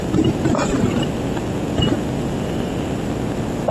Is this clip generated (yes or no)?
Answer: no